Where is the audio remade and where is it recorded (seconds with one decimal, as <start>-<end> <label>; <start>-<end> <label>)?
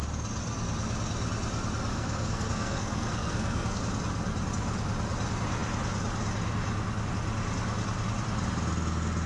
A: 0.0-1.9 recorded; 1.9-3.8 remade; 3.8-9.3 recorded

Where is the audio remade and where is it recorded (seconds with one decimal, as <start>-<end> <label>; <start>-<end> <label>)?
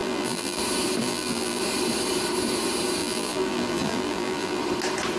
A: 0.0-0.6 remade; 0.6-1.0 recorded; 1.0-1.6 remade; 1.6-3.0 recorded; 3.0-4.6 remade; 4.6-5.2 recorded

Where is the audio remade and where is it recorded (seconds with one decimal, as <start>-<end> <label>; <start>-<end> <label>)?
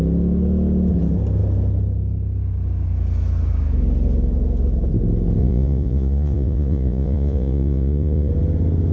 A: 0.0-5.4 recorded; 5.4-8.3 remade; 8.3-8.9 recorded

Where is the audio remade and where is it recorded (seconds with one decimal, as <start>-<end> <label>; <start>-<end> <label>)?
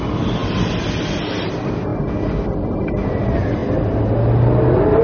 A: 0.0-5.0 recorded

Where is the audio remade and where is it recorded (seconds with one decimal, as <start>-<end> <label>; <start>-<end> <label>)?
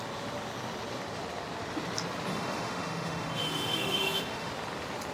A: 0.0-2.3 recorded; 2.3-4.5 remade; 4.5-5.1 recorded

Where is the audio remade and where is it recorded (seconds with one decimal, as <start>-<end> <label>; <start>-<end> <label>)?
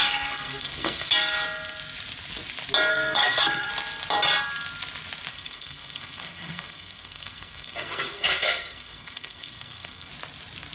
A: 0.0-1.1 remade; 1.1-2.9 recorded; 2.9-3.7 remade; 3.7-5.3 recorded; 5.3-10.1 remade; 10.1-10.7 recorded